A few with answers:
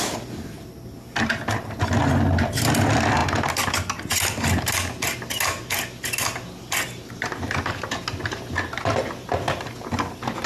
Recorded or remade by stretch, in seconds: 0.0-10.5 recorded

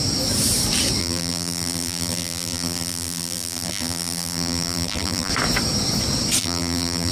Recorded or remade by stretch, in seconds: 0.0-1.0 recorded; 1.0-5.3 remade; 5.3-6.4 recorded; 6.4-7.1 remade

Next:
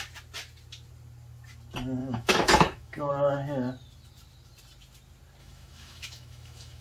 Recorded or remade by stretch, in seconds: 0.0-2.0 recorded; 2.0-3.1 remade; 3.1-5.4 recorded; 5.4-6.8 remade

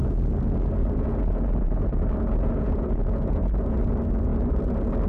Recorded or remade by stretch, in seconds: 0.0-0.8 recorded; 0.8-3.9 remade; 3.9-5.1 recorded

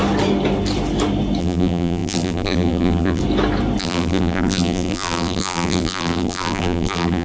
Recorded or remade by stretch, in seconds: 0.0-1.4 recorded; 1.4-3.2 remade; 3.2-3.8 recorded; 3.8-7.2 remade

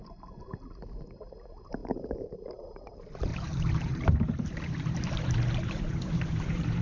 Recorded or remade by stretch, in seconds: 0.0-1.8 recorded; 1.8-2.5 remade; 2.5-3.3 recorded; 3.3-6.8 remade